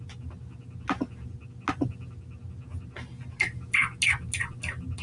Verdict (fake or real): real